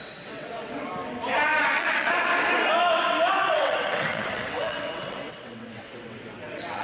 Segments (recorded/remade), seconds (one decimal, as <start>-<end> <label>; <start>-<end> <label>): 0.0-0.9 remade; 0.9-1.7 recorded; 1.7-2.3 remade; 2.3-3.3 recorded; 3.3-6.8 remade